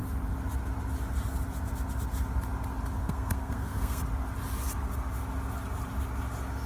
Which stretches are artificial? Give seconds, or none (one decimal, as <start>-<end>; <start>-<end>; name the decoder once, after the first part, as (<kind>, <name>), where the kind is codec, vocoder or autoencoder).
3.0-4.0 (codec, SNAC)